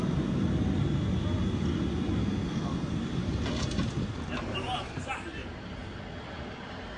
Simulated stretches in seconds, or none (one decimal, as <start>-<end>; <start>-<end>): 2.2-3.0